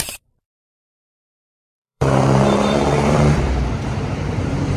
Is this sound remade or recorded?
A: remade